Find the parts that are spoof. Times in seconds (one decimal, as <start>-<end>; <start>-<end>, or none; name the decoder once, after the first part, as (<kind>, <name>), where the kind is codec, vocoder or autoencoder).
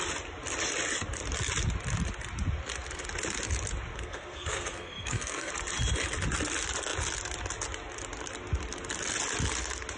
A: 3.9-5.5 (codec, SNAC)